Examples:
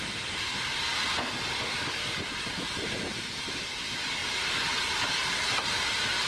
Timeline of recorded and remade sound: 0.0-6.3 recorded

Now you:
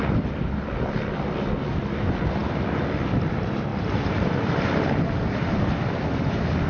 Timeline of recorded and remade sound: 0.0-3.7 recorded; 3.7-5.9 remade; 5.9-6.7 recorded

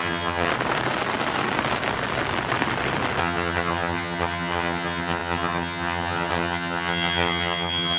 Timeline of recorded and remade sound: 0.0-0.5 remade; 0.5-3.2 recorded; 3.2-8.0 remade

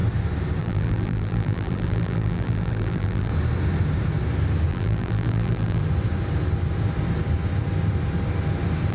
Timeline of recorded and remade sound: 0.0-0.6 recorded; 0.6-3.3 remade; 3.3-4.7 recorded; 4.7-5.8 remade; 5.8-8.9 recorded

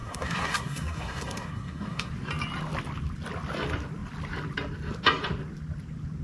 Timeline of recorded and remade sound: 0.0-2.1 remade; 2.1-6.2 recorded

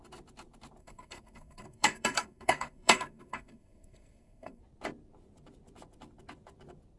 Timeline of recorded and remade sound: 0.0-0.8 recorded; 0.8-4.6 remade; 4.6-7.0 recorded

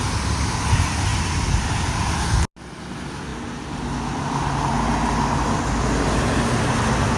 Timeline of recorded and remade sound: 0.0-7.2 recorded